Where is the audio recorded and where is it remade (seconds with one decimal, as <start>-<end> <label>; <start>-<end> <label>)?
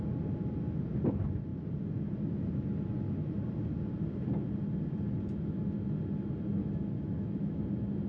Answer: 0.0-6.6 recorded; 6.6-7.6 remade; 7.6-8.1 recorded